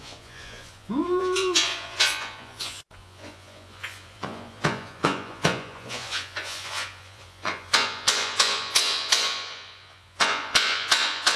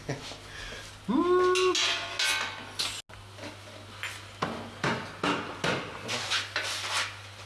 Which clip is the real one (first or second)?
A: second